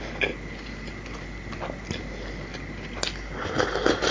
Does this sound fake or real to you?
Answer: real